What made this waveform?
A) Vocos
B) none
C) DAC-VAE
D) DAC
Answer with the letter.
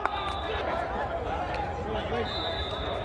B